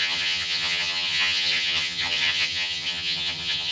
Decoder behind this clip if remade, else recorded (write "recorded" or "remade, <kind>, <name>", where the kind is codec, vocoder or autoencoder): remade, vocoder, HiFi-GAN